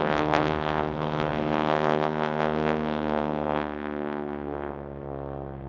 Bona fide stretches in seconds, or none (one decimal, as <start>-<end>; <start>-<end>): none